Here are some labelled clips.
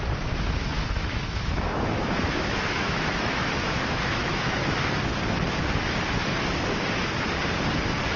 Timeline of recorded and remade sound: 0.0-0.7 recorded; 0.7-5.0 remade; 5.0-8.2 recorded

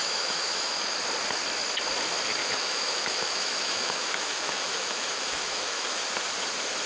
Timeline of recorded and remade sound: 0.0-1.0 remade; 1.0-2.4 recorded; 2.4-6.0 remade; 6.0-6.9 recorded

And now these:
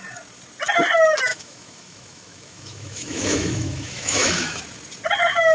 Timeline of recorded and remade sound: 0.0-1.3 recorded; 1.3-4.6 remade; 4.6-5.5 recorded

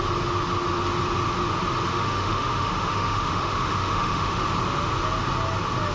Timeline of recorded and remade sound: 0.0-1.9 recorded; 1.9-4.4 remade; 4.4-5.9 recorded

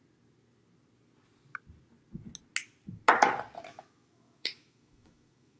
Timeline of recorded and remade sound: 0.0-3.7 recorded; 3.7-5.6 remade

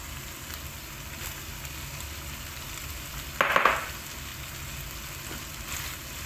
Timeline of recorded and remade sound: 0.0-6.3 recorded

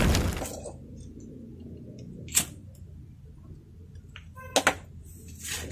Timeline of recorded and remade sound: 0.0-5.7 recorded

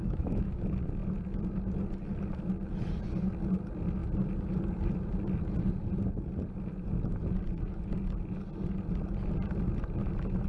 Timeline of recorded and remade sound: 0.0-0.6 remade; 0.6-10.5 recorded